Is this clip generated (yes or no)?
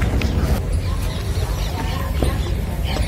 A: no